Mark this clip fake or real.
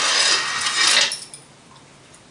real